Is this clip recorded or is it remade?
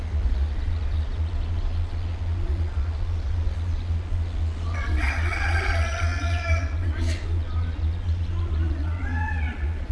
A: remade